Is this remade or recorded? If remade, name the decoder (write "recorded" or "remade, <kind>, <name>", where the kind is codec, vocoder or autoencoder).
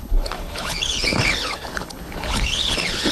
remade, codec, HILCodec